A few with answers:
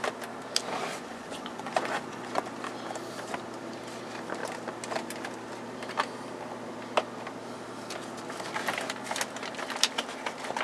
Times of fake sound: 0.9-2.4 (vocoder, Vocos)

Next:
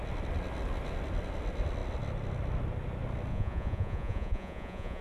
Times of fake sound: 3.3-5.0 (vocoder, Vocos)

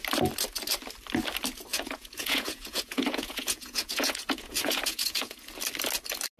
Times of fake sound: 1.7-5.5 (vocoder, Vocos)

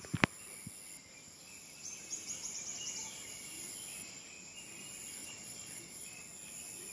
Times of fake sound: 5.2-6.2 (vocoder, Vocos)

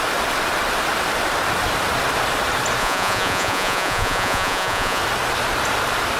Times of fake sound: 2.8-5.0 (vocoder, Vocos)